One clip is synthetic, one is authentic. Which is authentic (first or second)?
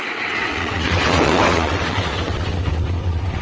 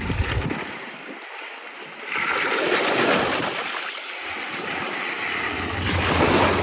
second